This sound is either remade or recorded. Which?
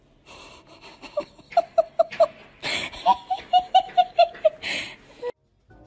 recorded